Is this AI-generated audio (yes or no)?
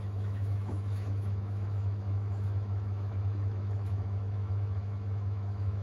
yes